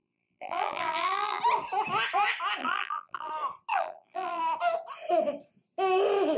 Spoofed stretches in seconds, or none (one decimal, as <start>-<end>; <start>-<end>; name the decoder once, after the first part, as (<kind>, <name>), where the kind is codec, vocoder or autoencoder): 0.0-1.4 (vocoder, BigVGAN v2); 2.6-3.3; 3.7-4.4